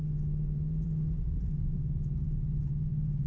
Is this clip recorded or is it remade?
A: remade